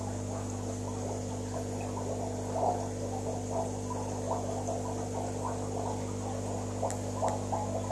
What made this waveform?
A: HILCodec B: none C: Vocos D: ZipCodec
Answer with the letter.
B